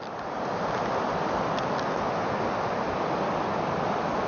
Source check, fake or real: real